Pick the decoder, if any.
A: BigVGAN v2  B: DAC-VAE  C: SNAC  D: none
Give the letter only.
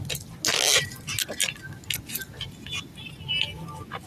D